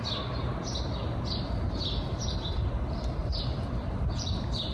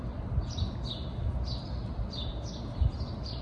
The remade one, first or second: first